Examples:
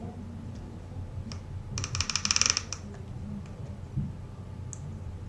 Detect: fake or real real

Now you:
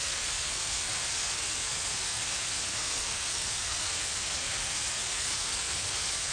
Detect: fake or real fake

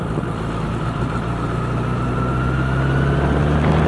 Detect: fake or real real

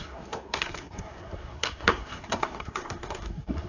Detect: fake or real fake